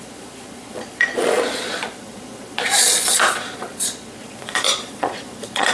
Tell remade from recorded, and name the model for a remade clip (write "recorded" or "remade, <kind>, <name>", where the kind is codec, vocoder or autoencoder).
remade, vocoder, Vocos